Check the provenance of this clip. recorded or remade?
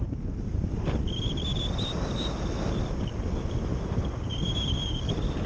recorded